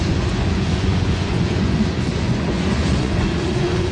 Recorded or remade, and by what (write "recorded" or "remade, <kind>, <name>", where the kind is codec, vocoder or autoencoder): remade, vocoder, Vocos